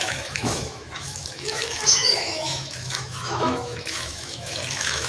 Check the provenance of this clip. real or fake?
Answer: fake